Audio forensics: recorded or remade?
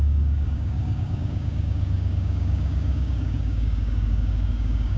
remade